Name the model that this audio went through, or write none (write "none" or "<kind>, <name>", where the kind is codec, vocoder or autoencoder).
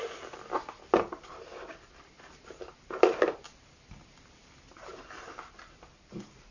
none